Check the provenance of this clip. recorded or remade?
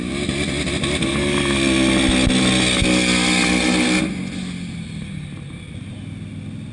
recorded